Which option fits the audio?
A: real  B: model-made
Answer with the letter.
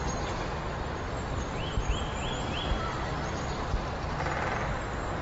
B